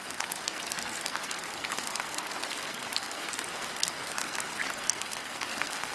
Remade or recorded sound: remade